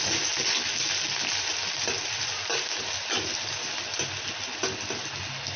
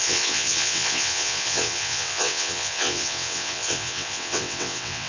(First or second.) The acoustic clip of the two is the first